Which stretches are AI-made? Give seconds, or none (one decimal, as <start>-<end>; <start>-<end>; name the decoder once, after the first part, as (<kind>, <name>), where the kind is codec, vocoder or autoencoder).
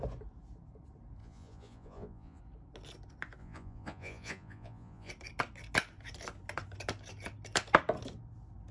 1.2-2.4 (vocoder, Vocos); 3.4-5.1